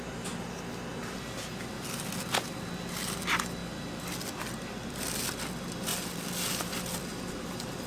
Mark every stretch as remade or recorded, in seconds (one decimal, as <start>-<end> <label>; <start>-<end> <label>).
0.0-7.9 recorded

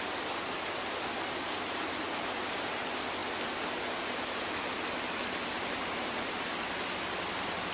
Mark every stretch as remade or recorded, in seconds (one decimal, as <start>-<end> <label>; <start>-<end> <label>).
0.0-7.7 recorded

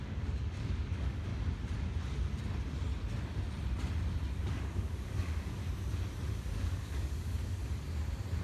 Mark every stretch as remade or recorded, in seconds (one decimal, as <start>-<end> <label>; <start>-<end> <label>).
0.0-1.3 remade; 1.3-4.4 recorded; 4.4-5.6 remade; 5.6-6.3 recorded; 6.3-7.6 remade; 7.6-8.4 recorded

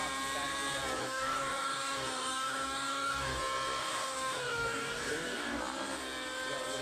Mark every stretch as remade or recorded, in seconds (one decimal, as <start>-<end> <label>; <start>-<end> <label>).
0.0-1.0 recorded; 1.0-3.4 remade; 3.4-3.8 recorded; 3.8-5.6 remade; 5.6-6.8 recorded

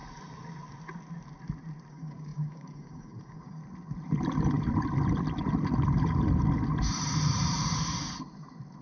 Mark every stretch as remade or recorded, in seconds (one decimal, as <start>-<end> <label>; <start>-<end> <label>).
0.0-1.9 recorded; 1.9-3.6 remade; 3.6-8.8 recorded

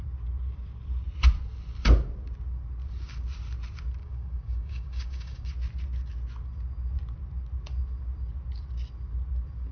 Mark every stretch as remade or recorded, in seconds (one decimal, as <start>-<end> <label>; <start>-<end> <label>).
0.0-4.0 recorded; 4.0-5.5 remade; 5.5-9.7 recorded

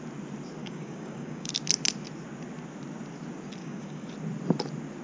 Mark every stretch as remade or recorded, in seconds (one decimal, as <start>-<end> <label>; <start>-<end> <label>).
0.0-0.6 recorded; 0.6-1.5 remade; 1.5-3.6 recorded; 3.6-4.1 remade; 4.1-5.0 recorded